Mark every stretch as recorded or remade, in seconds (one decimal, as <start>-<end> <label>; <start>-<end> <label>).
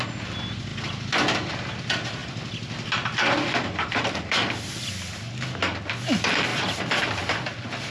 0.0-2.2 recorded; 2.2-4.9 remade; 4.9-6.5 recorded; 6.5-7.2 remade; 7.2-7.9 recorded